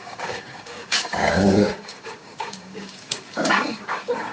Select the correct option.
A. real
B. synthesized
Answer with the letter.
B